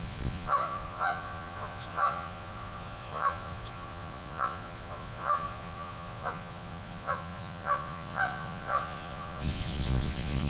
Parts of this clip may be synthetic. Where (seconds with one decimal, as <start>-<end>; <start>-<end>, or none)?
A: 0.0-10.5

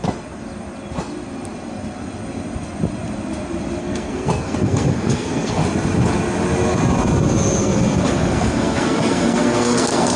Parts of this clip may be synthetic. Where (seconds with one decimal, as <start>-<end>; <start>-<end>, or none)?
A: 3.8-5.6; 7.6-10.2

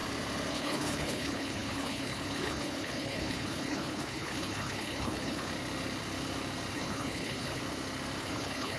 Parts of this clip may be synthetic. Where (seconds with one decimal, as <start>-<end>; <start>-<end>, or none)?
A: 0.5-5.5; 6.7-7.6; 8.2-8.8

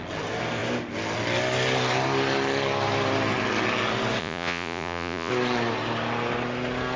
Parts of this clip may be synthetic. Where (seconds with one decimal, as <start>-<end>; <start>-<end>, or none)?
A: 4.2-5.3

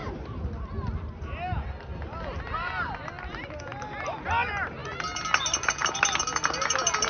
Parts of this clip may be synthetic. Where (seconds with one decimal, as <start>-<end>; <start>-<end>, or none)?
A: none

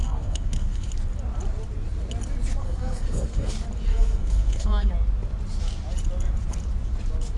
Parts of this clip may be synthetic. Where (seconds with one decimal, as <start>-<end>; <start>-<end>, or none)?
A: 0.0-0.9; 2.6-3.5; 3.9-4.9